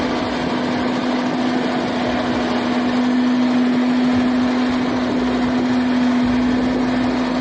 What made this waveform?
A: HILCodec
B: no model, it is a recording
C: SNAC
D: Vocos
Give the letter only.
B